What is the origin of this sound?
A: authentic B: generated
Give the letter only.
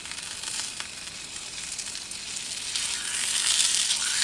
A